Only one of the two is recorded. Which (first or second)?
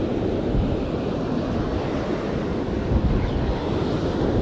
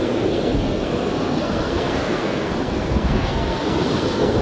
first